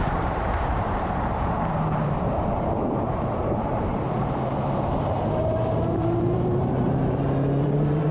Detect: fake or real fake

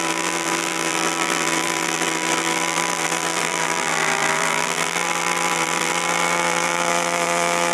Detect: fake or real fake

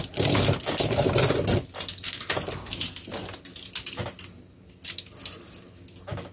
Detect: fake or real real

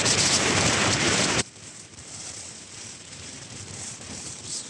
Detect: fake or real fake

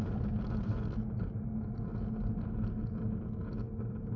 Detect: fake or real real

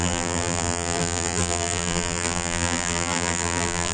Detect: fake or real fake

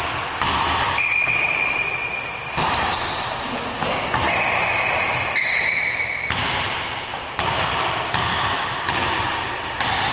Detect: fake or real fake